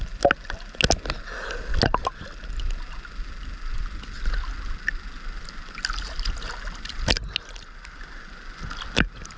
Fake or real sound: real